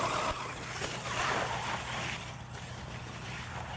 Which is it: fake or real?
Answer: real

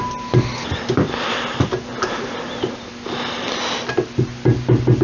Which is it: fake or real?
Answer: real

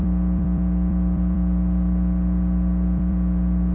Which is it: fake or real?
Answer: fake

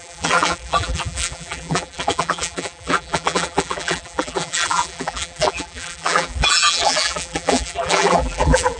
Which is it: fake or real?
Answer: fake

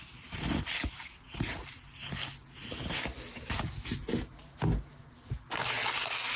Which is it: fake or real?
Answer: real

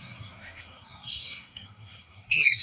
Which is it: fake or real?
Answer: fake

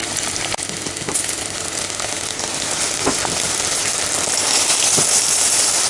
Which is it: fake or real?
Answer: real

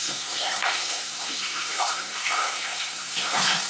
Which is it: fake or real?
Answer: fake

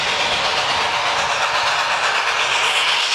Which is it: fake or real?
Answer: real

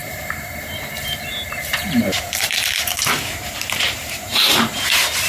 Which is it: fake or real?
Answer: fake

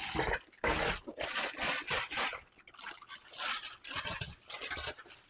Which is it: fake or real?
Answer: real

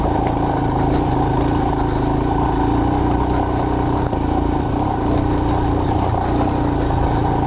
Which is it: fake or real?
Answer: real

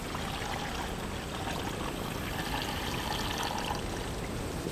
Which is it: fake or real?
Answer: real